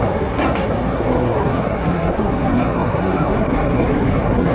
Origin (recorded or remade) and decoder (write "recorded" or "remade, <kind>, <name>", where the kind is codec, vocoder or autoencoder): remade, codec, SNAC